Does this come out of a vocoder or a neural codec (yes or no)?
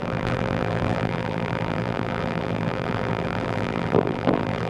yes